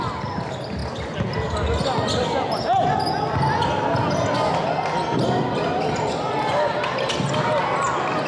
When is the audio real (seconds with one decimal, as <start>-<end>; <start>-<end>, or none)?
0.0-8.3